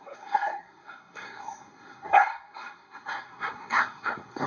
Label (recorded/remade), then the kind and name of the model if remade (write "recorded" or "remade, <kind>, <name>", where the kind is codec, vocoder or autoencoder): remade, codec, SNAC